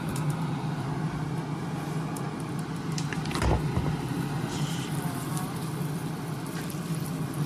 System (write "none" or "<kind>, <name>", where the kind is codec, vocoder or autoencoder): vocoder, BigVGAN v2